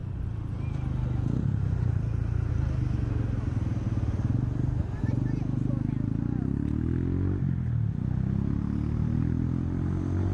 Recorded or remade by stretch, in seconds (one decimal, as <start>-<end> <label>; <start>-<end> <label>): 0.0-10.3 recorded